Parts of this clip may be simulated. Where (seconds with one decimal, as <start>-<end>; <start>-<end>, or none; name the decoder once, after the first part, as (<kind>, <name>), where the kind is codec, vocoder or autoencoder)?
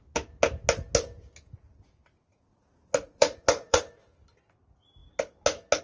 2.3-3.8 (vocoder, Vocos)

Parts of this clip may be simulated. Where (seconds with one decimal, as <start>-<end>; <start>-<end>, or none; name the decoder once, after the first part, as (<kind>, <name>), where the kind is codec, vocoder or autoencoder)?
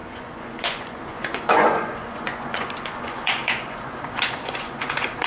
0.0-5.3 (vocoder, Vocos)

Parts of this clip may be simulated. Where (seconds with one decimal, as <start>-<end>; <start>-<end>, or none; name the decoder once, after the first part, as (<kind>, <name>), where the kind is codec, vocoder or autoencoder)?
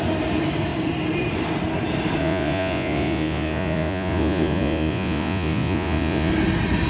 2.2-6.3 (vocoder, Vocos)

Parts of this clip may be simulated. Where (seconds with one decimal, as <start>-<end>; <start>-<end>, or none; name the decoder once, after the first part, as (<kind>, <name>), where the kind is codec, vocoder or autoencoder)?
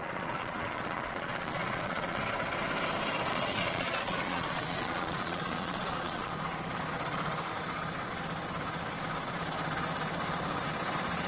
0.0-2.2 (vocoder, Vocos); 3.3-6.3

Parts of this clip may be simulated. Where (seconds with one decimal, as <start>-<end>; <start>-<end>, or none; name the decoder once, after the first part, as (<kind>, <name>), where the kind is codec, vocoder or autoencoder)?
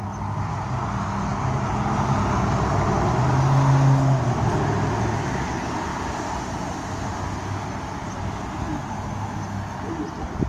none